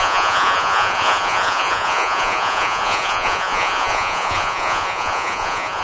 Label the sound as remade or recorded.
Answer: remade